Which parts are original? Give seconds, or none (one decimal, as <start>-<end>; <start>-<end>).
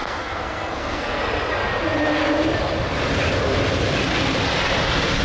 1.2-5.2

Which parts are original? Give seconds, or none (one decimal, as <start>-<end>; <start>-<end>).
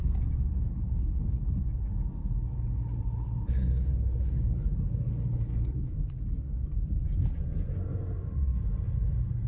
0.0-0.5; 1.3-2.2; 5.9-9.5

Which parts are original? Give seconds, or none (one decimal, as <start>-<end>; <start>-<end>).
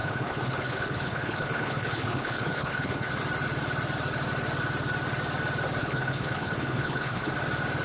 3.1-5.8; 7.3-7.8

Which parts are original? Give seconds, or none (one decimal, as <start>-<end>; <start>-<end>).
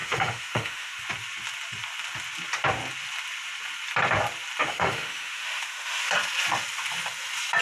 1.0-4.6; 6.1-7.6